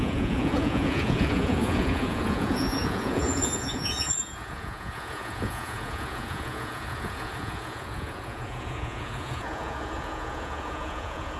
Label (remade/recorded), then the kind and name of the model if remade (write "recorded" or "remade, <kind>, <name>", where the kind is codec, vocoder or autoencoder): remade, vocoder, Vocos